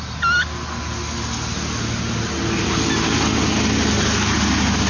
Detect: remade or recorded recorded